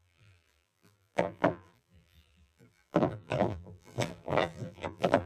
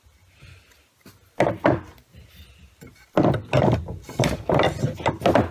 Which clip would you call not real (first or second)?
first